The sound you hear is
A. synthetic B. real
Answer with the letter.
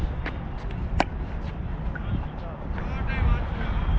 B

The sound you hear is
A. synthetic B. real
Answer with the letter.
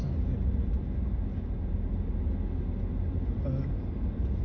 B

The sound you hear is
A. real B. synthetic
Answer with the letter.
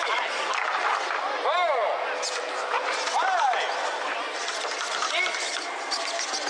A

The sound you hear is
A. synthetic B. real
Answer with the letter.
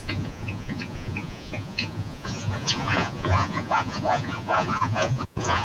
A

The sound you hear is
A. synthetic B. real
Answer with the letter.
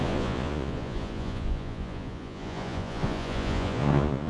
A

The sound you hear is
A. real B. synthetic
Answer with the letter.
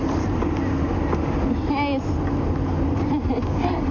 A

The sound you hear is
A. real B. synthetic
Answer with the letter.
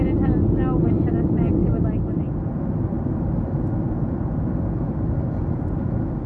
A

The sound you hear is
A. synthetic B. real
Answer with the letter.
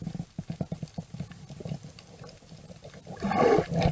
B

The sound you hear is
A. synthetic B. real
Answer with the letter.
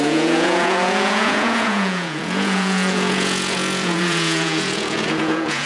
A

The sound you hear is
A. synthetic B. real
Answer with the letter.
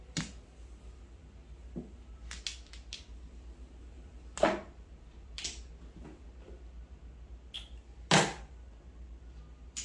B